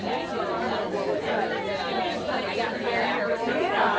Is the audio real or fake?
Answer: real